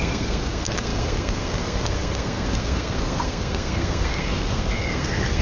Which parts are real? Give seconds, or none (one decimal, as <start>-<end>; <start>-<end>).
none